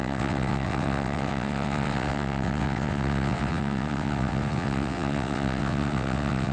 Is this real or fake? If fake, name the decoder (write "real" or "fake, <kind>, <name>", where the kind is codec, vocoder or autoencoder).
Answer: fake, vocoder, WaveNeXt